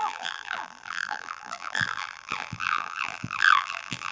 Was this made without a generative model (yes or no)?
no